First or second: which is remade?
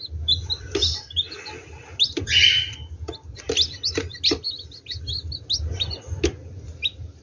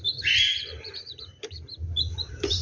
second